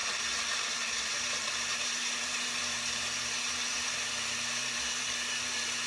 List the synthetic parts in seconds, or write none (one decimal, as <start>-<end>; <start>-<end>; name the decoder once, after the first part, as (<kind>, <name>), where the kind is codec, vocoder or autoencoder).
0.7-5.9 (vocoder, BigVGAN v2)